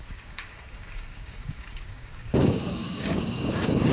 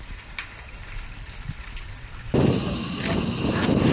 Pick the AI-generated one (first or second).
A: first